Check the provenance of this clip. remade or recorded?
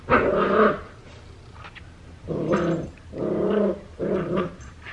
recorded